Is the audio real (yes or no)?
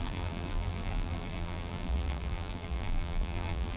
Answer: no